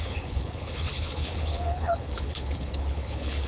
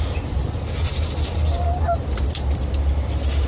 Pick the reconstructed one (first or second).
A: first